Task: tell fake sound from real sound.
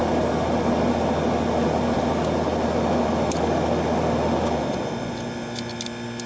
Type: real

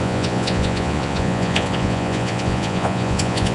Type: fake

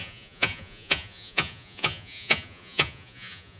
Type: fake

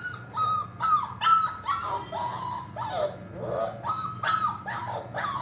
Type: real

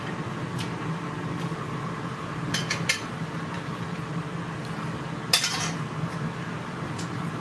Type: real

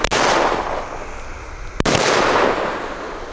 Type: real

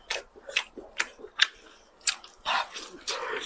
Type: fake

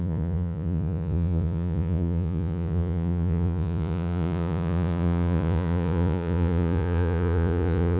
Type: fake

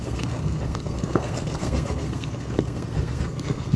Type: fake